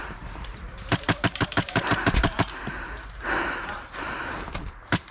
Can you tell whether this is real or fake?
fake